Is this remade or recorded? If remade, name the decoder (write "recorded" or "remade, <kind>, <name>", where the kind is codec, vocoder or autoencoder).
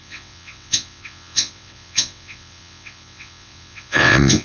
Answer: remade, vocoder, WaveNeXt